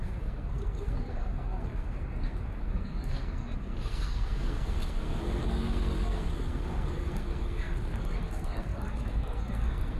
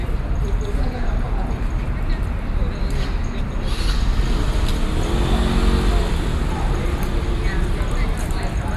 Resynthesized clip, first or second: first